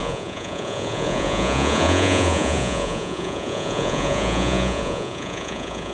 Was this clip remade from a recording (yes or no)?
yes